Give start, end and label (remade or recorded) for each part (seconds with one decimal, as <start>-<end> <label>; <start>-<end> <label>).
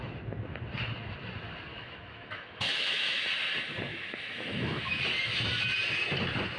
0.0-1.7 recorded; 1.7-3.2 remade; 3.2-3.9 recorded; 3.9-5.0 remade; 5.0-6.6 recorded